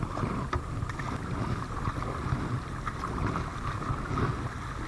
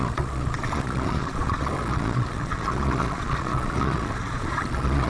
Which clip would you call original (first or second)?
first